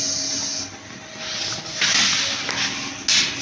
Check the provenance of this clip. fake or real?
real